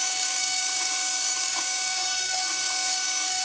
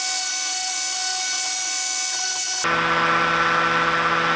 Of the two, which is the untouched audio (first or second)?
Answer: second